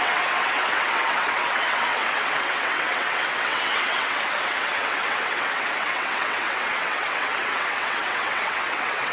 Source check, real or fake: fake